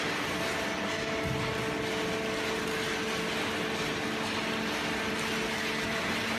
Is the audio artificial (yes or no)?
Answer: no